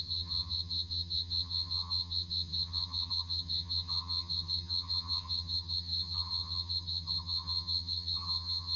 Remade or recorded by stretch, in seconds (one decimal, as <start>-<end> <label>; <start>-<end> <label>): 0.0-8.8 remade